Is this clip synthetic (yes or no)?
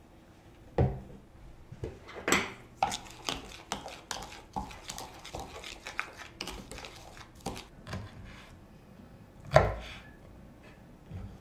no